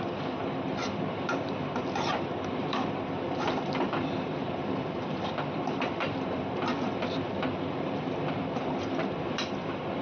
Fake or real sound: fake